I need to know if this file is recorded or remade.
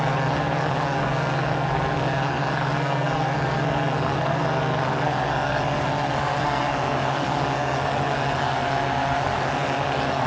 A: remade